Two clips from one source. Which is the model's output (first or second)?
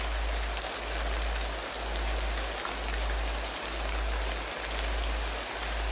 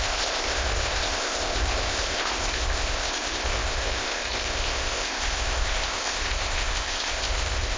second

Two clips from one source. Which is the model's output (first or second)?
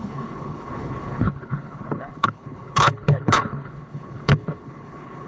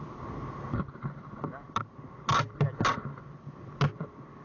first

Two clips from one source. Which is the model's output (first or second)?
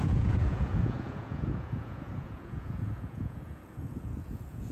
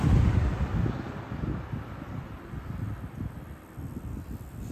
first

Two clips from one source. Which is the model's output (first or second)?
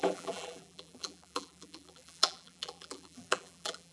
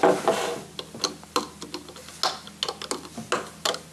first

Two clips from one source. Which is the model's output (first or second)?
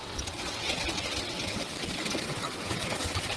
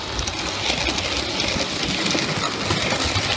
first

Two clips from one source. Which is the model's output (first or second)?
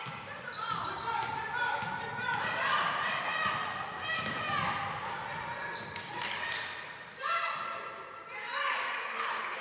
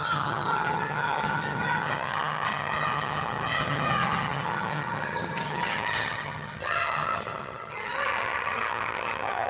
second